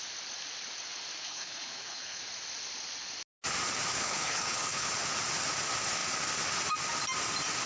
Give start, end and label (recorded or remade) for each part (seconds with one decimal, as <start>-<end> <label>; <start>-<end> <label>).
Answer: 0.0-1.2 recorded; 1.2-2.2 remade; 2.2-3.9 recorded; 3.9-4.9 remade; 4.9-7.7 recorded